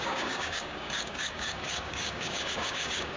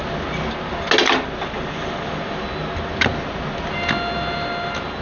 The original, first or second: second